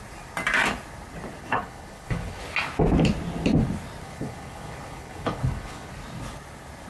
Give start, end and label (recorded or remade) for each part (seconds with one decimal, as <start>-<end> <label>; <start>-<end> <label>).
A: 0.0-1.4 recorded; 1.4-2.4 remade; 2.4-4.0 recorded; 4.0-5.9 remade; 5.9-6.9 recorded